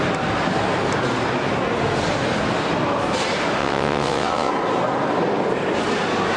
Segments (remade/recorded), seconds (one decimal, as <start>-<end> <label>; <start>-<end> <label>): 0.0-3.6 recorded; 3.6-4.5 remade; 4.5-6.4 recorded